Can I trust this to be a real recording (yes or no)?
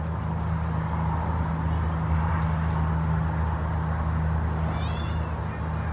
yes